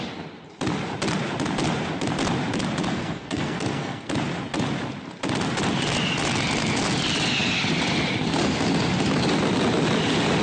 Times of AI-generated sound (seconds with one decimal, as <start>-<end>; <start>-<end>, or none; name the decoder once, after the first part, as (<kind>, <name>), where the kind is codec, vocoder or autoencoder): 2.9-4.1 (codec, SNAC)